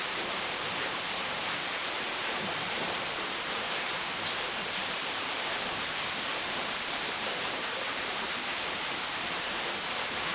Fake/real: fake